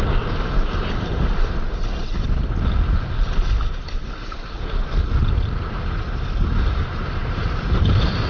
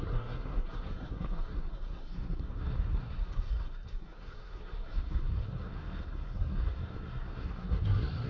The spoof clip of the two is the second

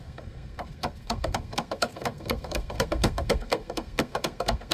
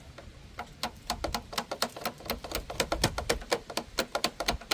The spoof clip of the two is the first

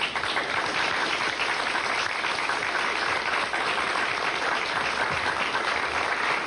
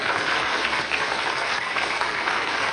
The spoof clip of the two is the second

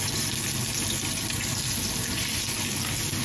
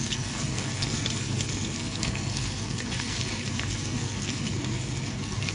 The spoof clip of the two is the second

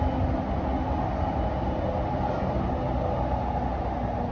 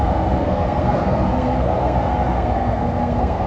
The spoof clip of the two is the second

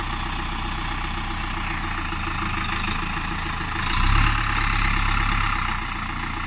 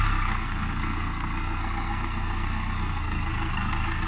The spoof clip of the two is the second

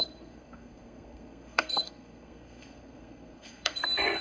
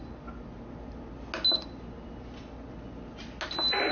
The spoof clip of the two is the first